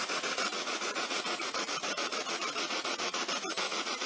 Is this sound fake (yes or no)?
yes